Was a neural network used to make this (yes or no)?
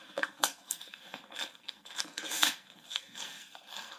yes